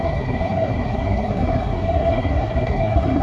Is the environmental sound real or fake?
fake